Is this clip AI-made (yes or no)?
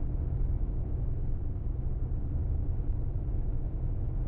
no